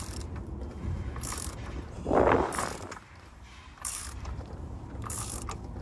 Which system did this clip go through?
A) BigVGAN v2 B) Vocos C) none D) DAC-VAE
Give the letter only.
A